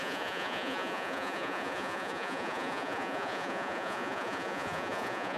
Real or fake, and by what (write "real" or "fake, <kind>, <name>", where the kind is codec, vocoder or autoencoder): fake, vocoder, Vocos